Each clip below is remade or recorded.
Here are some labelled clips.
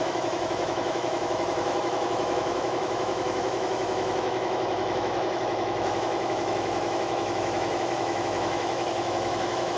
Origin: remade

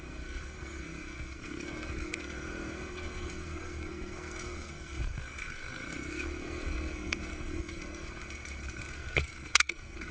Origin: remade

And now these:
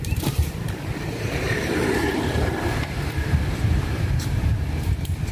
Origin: remade